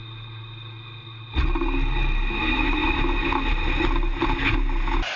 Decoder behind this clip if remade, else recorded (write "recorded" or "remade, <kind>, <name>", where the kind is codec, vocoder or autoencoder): recorded